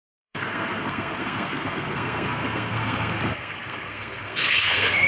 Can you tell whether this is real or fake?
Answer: fake